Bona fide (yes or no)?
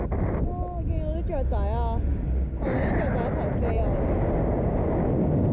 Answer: yes